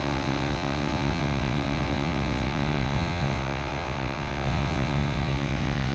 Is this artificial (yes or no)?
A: yes